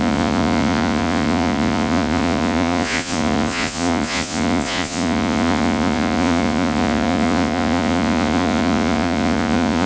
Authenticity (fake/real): fake